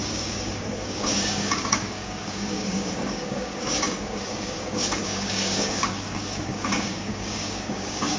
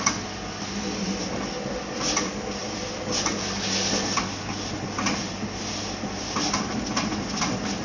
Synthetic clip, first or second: first